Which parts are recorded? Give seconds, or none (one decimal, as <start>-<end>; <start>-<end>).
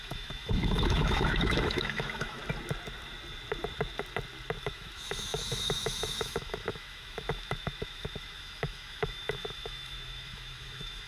2.4-4.6